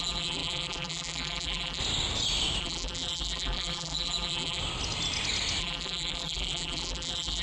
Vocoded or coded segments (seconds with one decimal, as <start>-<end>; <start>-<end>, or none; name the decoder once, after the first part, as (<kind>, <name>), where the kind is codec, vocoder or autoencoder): 0.0-1.8 (vocoder, BigVGAN v2); 2.6-4.6; 5.6-7.4